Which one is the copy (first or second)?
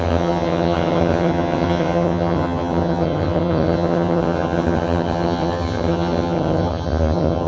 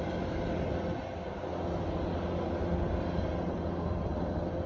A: first